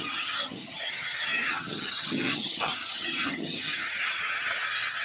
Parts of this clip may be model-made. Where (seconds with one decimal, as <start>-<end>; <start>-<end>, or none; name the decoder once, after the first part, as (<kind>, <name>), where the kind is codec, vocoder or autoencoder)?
0.0-5.0 (vocoder, HiFi-GAN)